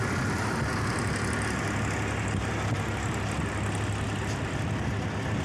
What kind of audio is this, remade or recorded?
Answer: recorded